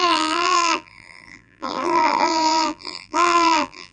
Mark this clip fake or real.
fake